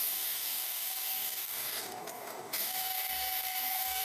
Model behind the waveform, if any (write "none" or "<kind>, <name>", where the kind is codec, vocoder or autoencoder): codec, DAC